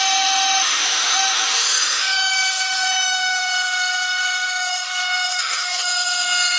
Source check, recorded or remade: remade